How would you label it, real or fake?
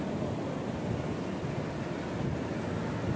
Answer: real